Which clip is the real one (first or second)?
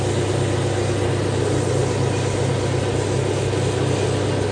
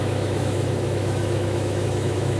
first